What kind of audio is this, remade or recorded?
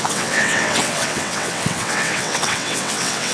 remade